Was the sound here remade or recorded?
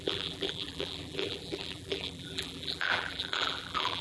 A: remade